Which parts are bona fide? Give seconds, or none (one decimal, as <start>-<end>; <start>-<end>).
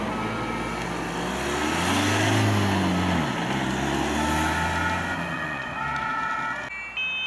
0.0-5.1; 5.8-7.3